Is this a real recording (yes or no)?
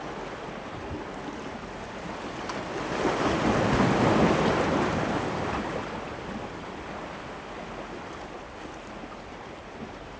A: yes